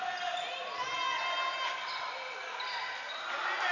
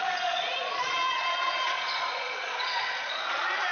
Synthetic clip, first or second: second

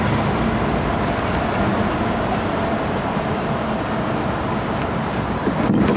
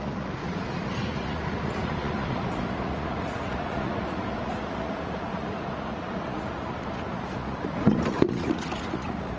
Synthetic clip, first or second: second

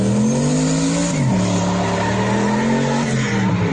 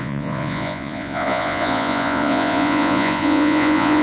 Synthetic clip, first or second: second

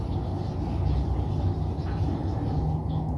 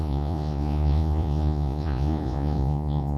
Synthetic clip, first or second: second